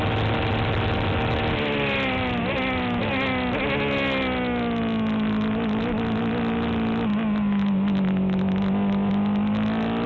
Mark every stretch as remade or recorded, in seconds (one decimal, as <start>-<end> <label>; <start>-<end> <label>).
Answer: 0.0-10.1 recorded